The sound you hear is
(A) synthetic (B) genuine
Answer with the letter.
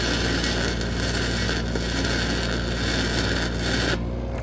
B